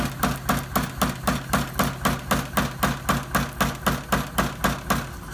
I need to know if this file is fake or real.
real